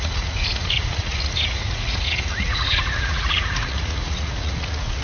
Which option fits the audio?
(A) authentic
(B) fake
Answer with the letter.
B